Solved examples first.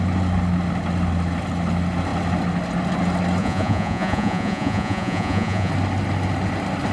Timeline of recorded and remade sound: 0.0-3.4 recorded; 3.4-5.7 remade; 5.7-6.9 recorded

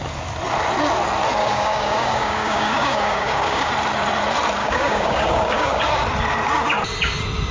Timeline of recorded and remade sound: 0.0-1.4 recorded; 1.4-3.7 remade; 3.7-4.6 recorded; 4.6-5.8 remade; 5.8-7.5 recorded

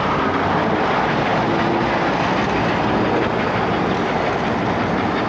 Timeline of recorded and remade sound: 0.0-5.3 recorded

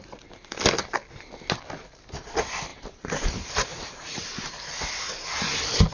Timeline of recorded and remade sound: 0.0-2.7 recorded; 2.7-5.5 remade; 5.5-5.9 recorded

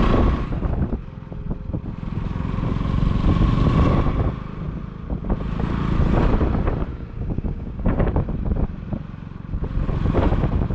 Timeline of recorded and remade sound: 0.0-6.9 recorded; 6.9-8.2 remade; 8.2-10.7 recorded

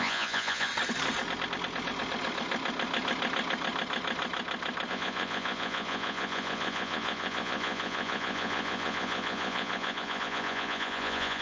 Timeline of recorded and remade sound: 0.0-0.7 remade; 0.7-4.9 recorded; 4.9-11.4 remade